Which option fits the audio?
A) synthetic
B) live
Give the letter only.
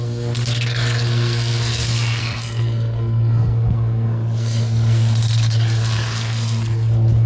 A